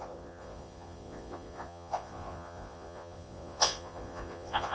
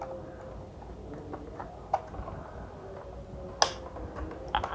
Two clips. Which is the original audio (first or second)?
second